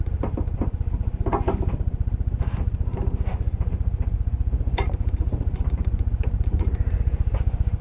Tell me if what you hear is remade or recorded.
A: remade